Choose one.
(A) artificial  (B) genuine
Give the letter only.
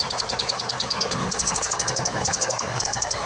A